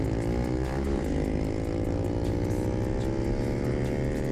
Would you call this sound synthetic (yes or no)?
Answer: no